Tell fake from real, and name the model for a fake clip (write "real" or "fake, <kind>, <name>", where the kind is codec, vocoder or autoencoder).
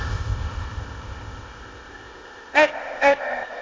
fake, codec, ZipCodec